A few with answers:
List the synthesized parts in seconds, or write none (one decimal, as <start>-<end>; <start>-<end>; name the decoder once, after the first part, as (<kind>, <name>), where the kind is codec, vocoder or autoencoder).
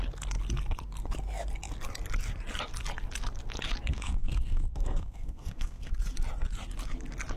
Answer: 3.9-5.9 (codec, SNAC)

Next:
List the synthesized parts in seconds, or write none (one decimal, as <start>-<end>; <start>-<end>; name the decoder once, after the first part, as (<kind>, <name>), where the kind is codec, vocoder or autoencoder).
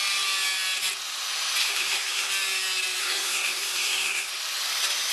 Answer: 1.6-2.3 (codec, SNAC); 3.0-4.3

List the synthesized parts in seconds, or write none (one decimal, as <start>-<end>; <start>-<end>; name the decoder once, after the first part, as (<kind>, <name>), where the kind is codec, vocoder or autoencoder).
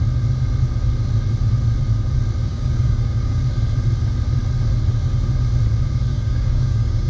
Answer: 2.5-3.4 (codec, DAC); 6.1-7.1